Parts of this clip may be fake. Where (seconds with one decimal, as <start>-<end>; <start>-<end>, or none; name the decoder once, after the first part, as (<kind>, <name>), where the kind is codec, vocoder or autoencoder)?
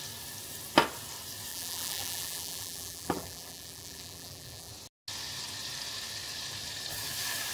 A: 1.5-4.7 (vocoder, BigVGAN v2)